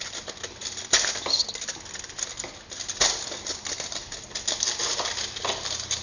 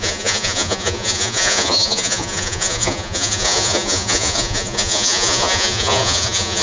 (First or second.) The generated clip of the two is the second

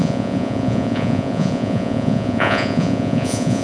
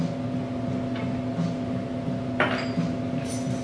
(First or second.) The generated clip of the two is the first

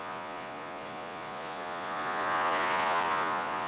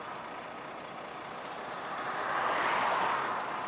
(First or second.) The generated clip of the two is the first